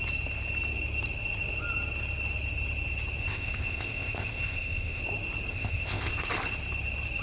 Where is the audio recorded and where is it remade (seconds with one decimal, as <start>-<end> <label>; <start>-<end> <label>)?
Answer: 0.0-3.2 recorded; 3.2-5.0 remade; 5.0-5.5 recorded; 5.5-6.1 remade; 6.1-7.2 recorded